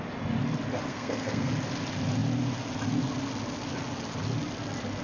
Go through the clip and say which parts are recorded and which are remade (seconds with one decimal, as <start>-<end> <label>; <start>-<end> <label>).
0.0-0.9 recorded; 0.9-1.5 remade; 1.5-5.0 recorded